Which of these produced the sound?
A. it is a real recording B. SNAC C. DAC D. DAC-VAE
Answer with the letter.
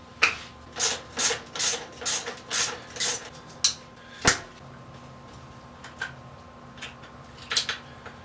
A